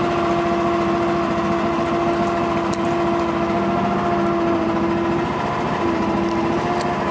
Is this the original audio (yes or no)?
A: yes